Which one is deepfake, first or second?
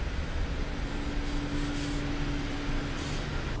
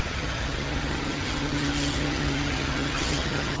second